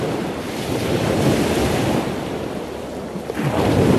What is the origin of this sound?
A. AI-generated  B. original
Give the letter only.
B